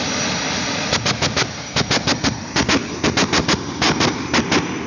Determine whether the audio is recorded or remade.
recorded